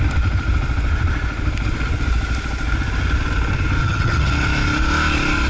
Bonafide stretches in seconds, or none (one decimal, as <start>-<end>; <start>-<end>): 0.0-3.8; 4.3-5.5